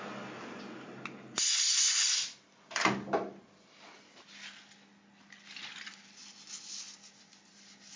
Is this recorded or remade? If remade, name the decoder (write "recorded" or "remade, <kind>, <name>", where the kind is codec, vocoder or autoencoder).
recorded